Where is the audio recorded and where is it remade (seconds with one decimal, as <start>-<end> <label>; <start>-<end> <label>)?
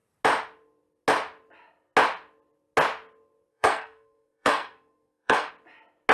0.0-3.5 recorded; 3.5-5.5 remade; 5.5-6.1 recorded